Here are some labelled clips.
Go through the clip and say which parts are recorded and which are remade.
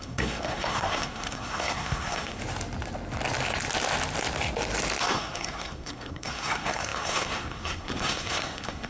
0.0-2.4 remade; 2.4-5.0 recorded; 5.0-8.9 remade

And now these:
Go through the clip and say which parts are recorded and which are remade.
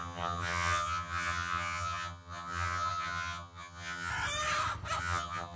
0.0-4.1 remade; 4.1-5.0 recorded; 5.0-5.6 remade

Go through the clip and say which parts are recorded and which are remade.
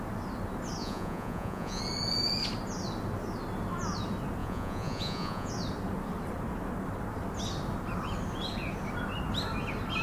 0.0-0.8 recorded; 0.8-1.8 remade; 1.8-4.4 recorded; 4.4-5.5 remade; 5.5-10.0 recorded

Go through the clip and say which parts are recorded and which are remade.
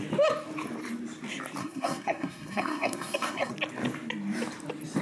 0.0-1.6 recorded; 1.6-3.5 remade; 3.5-5.0 recorded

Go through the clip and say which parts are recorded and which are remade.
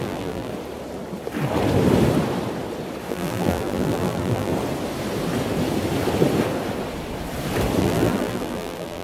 0.0-0.5 remade; 0.5-3.1 recorded; 3.1-4.5 remade; 4.5-7.8 recorded; 7.8-9.0 remade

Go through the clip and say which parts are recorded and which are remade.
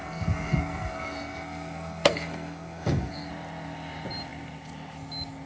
0.0-3.3 remade; 3.3-5.5 recorded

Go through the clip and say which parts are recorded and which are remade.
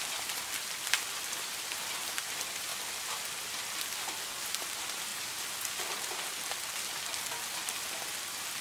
0.0-2.7 remade; 2.7-4.4 recorded; 4.4-5.1 remade; 5.1-8.1 recorded; 8.1-8.6 remade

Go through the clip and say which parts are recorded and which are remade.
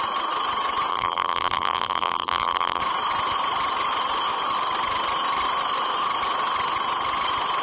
0.0-0.9 recorded; 0.9-2.8 remade; 2.8-7.6 recorded